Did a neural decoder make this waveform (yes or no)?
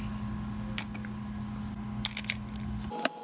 no